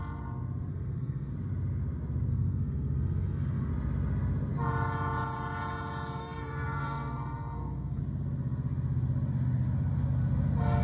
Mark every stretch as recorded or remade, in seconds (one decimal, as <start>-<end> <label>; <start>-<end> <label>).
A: 0.0-0.7 recorded; 0.7-1.3 remade; 1.3-2.3 recorded; 2.3-3.7 remade; 3.7-6.2 recorded; 6.2-8.0 remade; 8.0-10.8 recorded